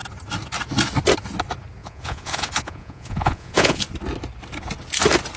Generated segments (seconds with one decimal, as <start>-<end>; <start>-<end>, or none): 1.8-3.8